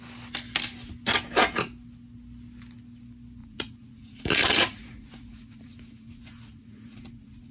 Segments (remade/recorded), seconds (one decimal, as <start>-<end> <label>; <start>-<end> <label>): 0.0-3.4 recorded; 3.4-7.5 remade